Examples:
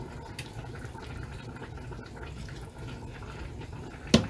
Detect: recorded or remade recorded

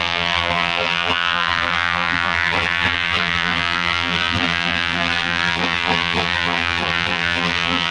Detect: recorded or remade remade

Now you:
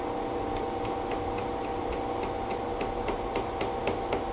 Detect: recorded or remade recorded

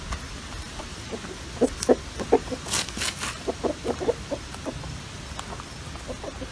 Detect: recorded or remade recorded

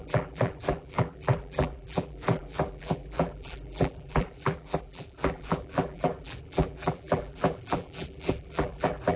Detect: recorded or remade remade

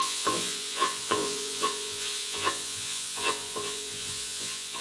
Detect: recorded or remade remade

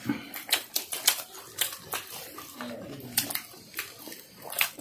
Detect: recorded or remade recorded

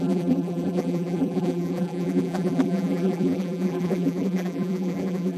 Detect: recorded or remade remade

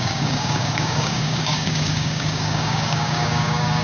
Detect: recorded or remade remade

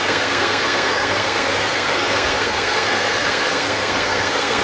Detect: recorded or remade remade